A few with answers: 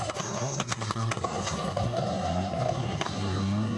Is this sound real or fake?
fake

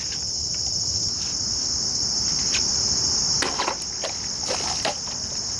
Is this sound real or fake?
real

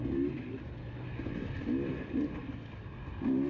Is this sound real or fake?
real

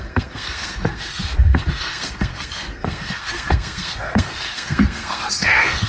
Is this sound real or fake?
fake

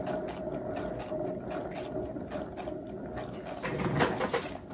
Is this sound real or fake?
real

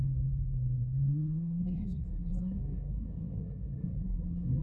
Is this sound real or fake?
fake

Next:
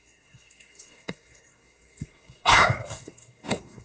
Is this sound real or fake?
fake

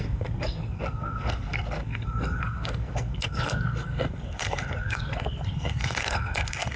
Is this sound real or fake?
fake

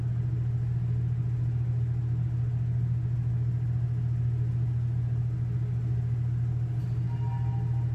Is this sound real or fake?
real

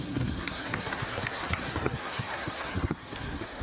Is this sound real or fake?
fake